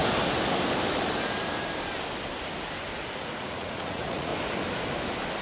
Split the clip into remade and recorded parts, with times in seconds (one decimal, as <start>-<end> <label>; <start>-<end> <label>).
0.0-3.2 recorded; 3.2-4.3 remade; 4.3-5.4 recorded